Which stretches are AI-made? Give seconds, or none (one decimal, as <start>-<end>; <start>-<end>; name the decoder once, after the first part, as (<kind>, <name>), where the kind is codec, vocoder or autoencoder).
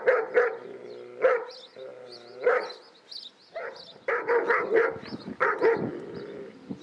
none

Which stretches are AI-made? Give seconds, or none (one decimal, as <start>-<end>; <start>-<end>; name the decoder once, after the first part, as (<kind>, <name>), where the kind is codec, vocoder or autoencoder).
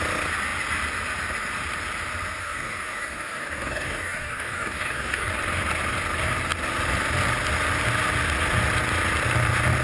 2.4-5.3 (codec, DAC)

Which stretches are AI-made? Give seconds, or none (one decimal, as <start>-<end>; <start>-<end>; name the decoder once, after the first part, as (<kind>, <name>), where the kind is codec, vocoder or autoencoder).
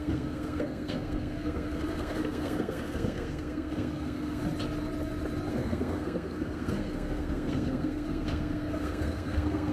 0.0-4.4 (codec, SNAC); 5.5-9.7